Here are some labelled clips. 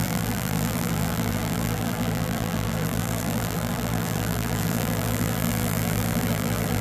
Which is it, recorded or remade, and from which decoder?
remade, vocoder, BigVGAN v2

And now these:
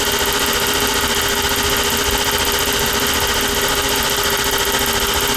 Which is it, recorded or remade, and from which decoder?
recorded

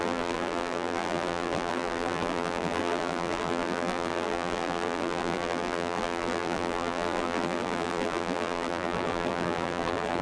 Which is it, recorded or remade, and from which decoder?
remade, vocoder, BigVGAN v2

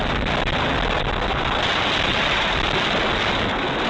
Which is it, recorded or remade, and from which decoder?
recorded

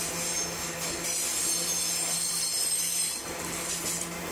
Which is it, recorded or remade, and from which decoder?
recorded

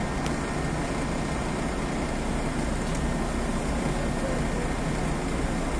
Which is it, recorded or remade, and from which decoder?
recorded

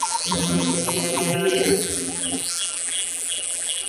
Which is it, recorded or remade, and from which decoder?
remade, vocoder, BigVGAN v2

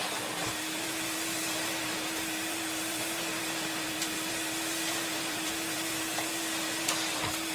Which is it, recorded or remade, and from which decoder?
remade, vocoder, BigVGAN v2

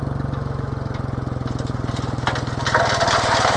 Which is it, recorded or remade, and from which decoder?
recorded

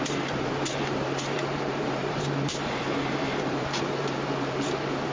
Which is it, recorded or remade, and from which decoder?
remade, vocoder, BigVGAN v2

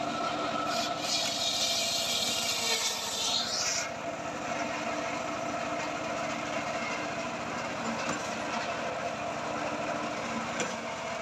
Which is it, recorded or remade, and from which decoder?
recorded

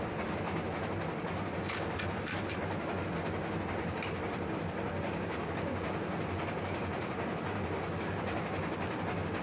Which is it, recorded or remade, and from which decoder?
recorded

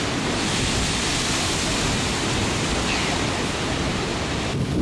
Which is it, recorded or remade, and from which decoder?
remade, vocoder, BigVGAN v2